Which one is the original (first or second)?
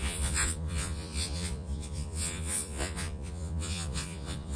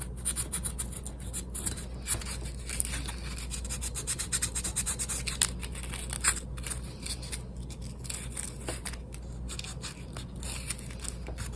second